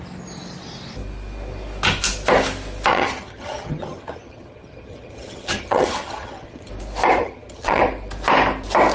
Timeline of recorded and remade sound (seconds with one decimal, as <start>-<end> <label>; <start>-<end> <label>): 0.0-2.9 recorded; 2.9-6.7 remade; 6.7-7.2 recorded; 7.2-7.8 remade; 7.8-8.9 recorded

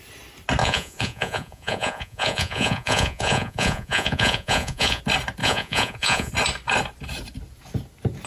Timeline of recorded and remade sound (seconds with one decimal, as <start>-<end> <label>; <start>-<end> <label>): 0.0-0.6 recorded; 0.6-5.0 remade; 5.0-5.4 recorded; 5.4-6.3 remade; 6.3-8.3 recorded

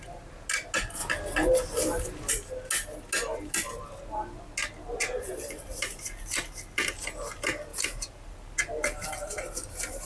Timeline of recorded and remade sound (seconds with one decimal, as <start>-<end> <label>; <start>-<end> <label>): 0.0-5.0 recorded; 5.0-5.7 remade; 5.7-7.7 recorded; 7.7-10.1 remade

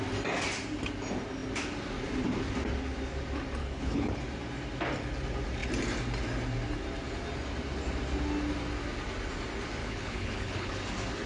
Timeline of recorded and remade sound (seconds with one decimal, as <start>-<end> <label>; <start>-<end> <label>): 0.0-3.6 recorded; 3.6-4.2 remade; 4.2-9.8 recorded; 9.8-10.8 remade; 10.8-11.3 recorded